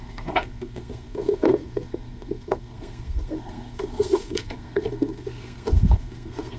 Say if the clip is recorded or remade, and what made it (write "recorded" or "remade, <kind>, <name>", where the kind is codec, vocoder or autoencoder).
remade, codec, SNAC